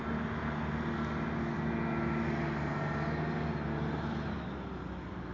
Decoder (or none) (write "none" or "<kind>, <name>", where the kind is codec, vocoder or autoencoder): none